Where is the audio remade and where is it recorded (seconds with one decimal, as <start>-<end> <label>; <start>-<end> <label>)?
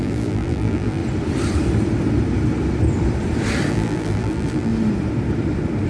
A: 0.0-1.0 remade; 1.0-3.7 recorded; 3.7-4.7 remade; 4.7-5.9 recorded